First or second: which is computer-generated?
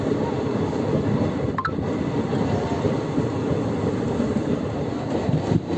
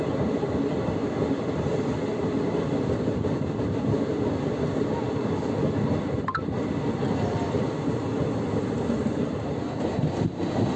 first